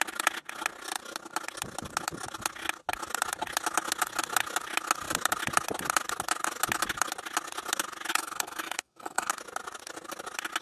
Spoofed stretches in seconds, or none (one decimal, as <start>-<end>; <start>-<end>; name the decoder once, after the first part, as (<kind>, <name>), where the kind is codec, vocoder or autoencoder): 8.1-9.3 (codec, SNAC)